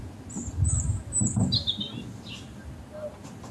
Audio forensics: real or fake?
real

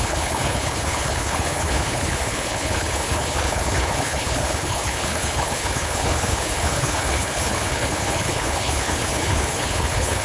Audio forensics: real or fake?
fake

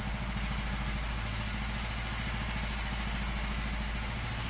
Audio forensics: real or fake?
real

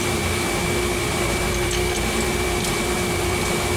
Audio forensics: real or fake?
fake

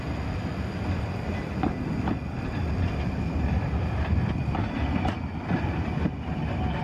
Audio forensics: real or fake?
real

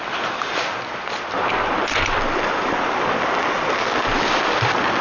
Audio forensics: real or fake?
real